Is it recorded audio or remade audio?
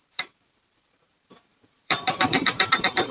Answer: remade